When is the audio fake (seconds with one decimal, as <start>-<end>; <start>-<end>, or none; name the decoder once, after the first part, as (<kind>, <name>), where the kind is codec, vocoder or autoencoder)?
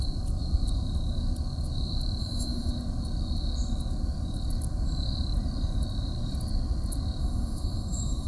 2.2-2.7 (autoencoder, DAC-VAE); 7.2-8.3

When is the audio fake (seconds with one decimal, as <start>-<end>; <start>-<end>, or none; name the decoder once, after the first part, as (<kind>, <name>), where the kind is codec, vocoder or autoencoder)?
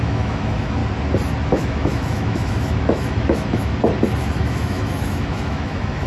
0.0-0.8 (autoencoder, DAC-VAE); 1.5-3.7; 4.2-6.1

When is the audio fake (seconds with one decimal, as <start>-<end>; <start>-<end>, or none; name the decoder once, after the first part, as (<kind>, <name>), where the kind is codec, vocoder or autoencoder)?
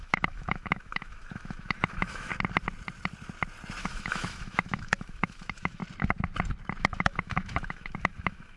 0.0-2.3 (autoencoder, DAC-VAE); 3.8-5.8; 6.8-8.6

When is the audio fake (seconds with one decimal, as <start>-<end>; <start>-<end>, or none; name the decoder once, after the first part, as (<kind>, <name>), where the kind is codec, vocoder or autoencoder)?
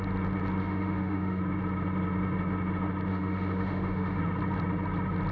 0.6-1.4 (autoencoder, DAC-VAE); 3.1-4.2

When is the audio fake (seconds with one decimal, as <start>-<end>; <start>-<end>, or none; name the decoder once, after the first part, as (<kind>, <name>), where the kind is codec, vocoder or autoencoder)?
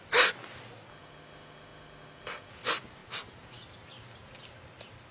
0.9-2.5 (autoencoder, DAC-VAE)